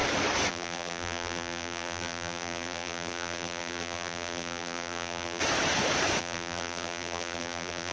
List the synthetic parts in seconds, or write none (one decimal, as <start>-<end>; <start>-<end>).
0.5-5.4; 6.2-7.9

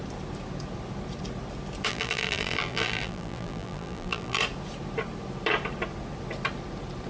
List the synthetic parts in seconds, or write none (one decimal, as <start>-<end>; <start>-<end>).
1.9-4.4

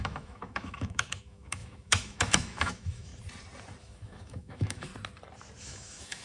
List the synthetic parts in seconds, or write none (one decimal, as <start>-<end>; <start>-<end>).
0.0-3.1; 3.8-4.9; 5.6-6.2

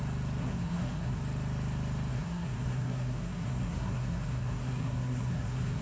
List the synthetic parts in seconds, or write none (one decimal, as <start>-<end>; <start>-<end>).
0.4-1.2; 2.1-5.8

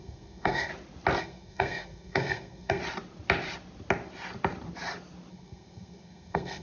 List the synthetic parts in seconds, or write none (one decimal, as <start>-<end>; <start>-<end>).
0.0-0.7; 1.2-2.8; 5.3-6.6

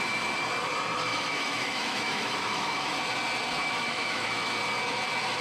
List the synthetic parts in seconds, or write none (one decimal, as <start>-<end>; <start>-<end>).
1.1-3.0; 3.6-4.5

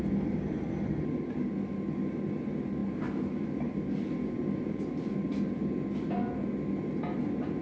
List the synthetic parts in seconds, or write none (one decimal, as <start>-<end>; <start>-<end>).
none